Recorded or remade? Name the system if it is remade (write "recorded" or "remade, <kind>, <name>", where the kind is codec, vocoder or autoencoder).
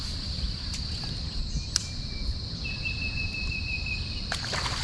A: recorded